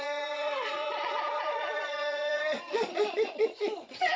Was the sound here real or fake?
fake